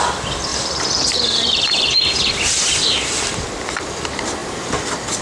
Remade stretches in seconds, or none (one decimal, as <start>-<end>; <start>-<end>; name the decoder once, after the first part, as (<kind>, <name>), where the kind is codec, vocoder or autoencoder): 0.5-2.3 (vocoder, BigVGAN v2)